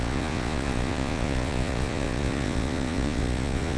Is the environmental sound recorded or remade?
remade